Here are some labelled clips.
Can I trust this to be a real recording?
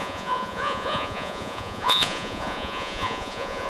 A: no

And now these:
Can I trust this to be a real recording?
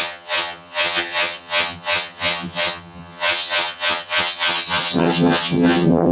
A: no